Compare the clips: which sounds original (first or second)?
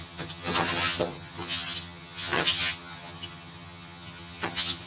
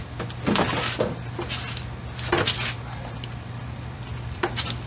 second